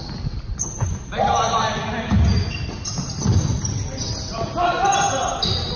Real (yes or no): yes